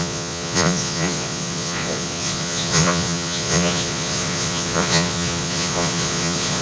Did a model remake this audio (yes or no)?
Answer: yes